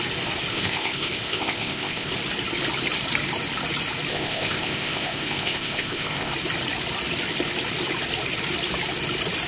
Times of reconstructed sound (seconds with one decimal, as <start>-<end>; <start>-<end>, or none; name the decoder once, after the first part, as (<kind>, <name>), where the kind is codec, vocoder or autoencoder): 0.5-2.1 (codec, ZipCodec); 4.1-6.3